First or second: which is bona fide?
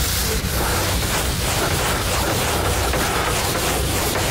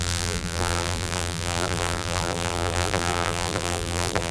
first